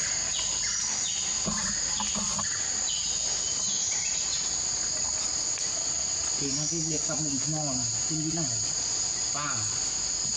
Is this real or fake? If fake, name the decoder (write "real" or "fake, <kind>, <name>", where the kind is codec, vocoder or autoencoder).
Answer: real